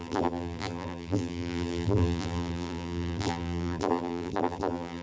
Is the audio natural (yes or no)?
no